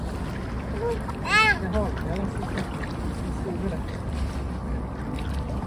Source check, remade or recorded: recorded